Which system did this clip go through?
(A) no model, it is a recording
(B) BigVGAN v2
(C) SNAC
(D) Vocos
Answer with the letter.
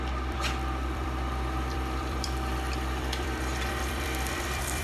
B